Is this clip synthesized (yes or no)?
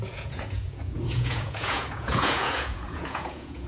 yes